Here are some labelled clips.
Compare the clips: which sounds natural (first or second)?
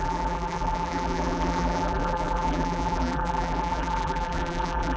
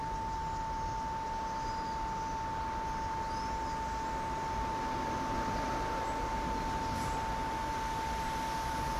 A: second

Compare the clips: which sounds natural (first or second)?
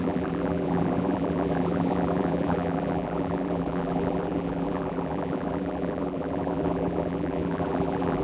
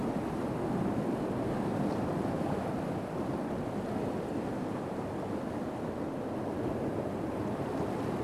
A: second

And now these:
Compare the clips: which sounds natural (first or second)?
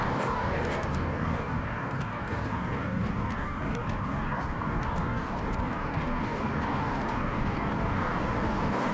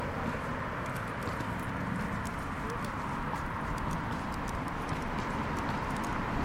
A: second